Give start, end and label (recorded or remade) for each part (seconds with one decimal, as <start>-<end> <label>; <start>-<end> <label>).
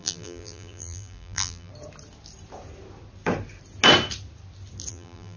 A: 0.0-1.7 remade; 1.7-4.9 recorded; 4.9-5.4 remade